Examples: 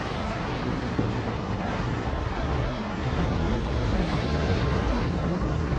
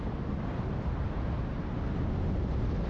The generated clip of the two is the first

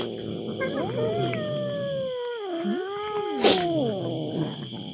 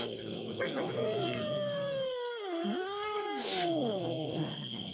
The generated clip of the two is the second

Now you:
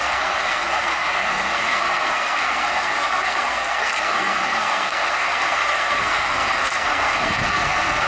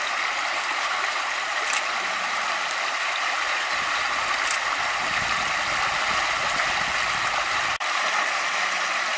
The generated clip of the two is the first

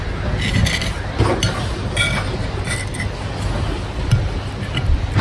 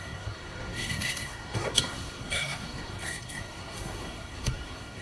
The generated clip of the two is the second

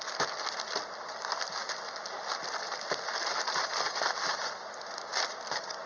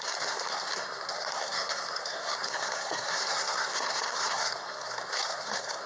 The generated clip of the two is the second